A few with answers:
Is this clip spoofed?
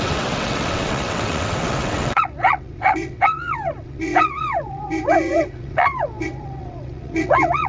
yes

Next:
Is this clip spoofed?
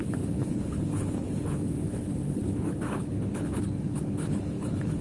yes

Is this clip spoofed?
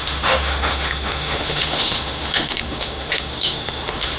yes